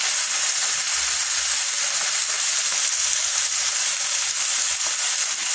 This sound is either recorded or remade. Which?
recorded